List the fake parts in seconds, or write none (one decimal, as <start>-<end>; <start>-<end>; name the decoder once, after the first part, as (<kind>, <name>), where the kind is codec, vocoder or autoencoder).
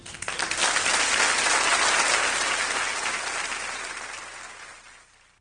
none